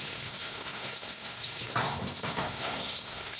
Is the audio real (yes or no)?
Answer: no